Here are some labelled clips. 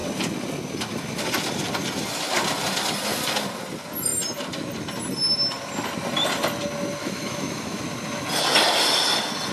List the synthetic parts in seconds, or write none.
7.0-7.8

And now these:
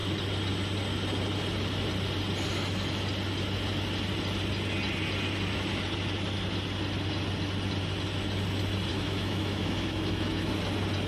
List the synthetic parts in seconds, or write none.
8.9-10.5

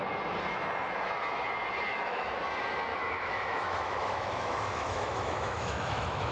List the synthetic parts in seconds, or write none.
1.9-2.4; 2.9-6.3